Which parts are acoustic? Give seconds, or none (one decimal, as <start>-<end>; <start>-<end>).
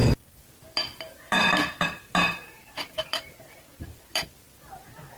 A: none